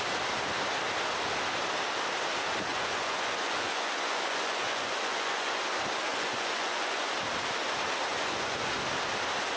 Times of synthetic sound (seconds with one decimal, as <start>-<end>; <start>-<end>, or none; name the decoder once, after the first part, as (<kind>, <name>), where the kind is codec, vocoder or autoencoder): 2.7-5.6 (vocoder, Vocos); 6.1-7.1; 8.1-8.7